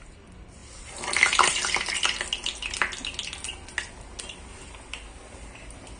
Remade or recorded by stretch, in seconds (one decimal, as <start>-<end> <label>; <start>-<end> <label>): 0.0-6.0 recorded